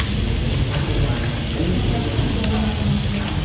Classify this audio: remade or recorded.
recorded